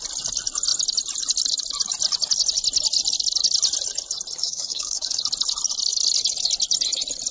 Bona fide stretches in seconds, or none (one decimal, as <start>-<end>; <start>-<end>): 0.0-4.4; 5.2-7.3